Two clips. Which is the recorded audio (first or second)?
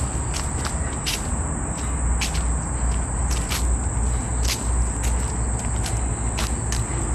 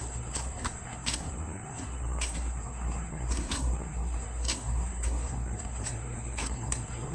first